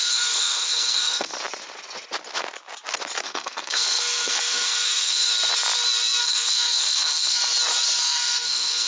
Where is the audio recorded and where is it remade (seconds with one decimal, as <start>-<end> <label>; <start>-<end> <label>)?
0.0-1.3 remade; 1.3-3.2 recorded; 3.2-5.3 remade; 5.3-6.2 recorded; 6.2-7.4 remade; 7.4-8.0 recorded; 8.0-8.9 remade